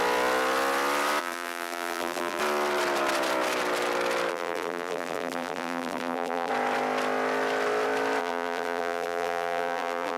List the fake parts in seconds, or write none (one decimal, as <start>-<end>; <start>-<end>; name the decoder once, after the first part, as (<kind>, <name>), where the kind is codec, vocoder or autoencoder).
1.2-2.4 (vocoder, BigVGAN v2); 4.3-6.5; 8.2-10.2